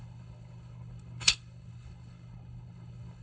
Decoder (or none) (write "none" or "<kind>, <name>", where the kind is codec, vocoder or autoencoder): codec, HILCodec